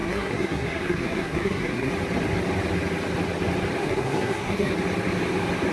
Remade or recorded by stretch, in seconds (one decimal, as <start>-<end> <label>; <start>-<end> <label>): 0.0-1.9 remade; 1.9-3.8 recorded; 3.8-4.7 remade; 4.7-5.7 recorded